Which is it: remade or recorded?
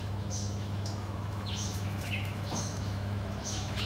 remade